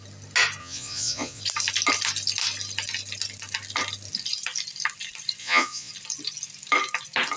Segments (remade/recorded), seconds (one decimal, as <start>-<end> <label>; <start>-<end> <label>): 0.0-0.6 recorded; 0.6-1.4 remade; 1.4-5.4 recorded; 5.4-5.9 remade; 5.9-7.4 recorded